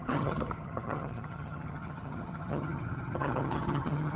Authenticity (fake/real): fake